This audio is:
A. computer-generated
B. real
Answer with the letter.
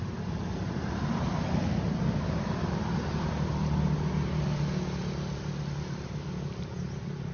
B